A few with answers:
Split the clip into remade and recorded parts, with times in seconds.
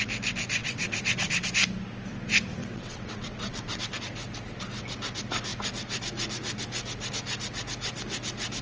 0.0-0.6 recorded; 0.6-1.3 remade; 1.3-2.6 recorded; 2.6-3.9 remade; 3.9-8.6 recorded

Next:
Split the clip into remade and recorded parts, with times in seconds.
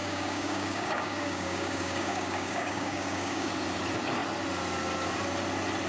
0.0-3.5 remade; 3.5-5.9 recorded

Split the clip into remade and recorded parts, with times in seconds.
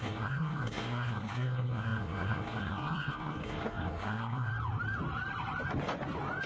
0.0-4.5 remade; 4.5-6.5 recorded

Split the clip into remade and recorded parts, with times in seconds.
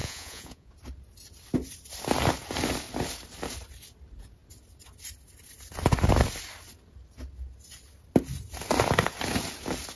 0.0-0.7 remade; 0.7-10.0 recorded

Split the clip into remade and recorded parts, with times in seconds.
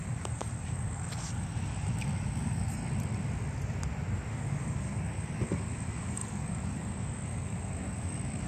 0.0-2.8 remade; 2.8-4.3 recorded; 4.3-8.5 remade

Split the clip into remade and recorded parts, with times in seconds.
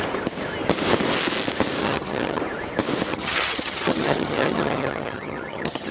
0.0-1.8 recorded; 1.8-2.4 remade; 2.4-3.1 recorded; 3.1-5.9 remade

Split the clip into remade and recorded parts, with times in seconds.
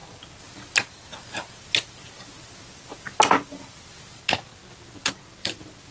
0.0-5.9 recorded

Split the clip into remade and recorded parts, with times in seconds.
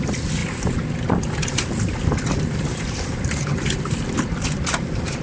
0.0-5.2 recorded